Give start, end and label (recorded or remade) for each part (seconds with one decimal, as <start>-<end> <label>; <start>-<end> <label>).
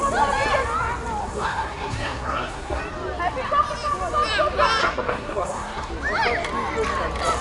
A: 0.0-1.2 recorded; 1.2-2.8 remade; 2.8-4.8 recorded; 4.8-5.9 remade; 5.9-7.4 recorded